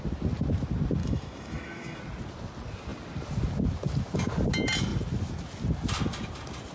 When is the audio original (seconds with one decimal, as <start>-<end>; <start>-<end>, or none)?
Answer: 0.0-1.0; 2.0-6.7